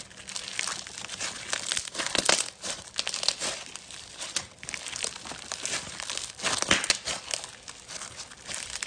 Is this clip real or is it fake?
real